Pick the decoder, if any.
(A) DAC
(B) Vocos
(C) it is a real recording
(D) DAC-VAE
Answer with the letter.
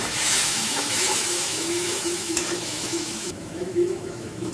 D